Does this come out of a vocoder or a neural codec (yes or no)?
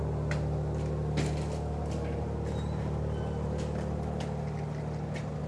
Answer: no